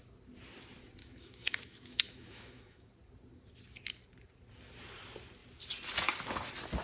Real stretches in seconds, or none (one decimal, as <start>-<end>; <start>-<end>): 0.0-1.0; 2.9-6.8